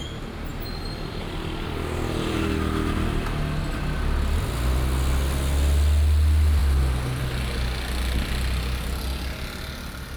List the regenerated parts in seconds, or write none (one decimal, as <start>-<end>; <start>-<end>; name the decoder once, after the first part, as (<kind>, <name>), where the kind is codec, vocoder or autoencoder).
none